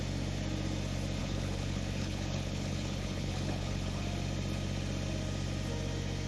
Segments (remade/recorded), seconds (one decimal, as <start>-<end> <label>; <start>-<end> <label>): 0.0-1.2 recorded; 1.2-4.0 remade; 4.0-6.3 recorded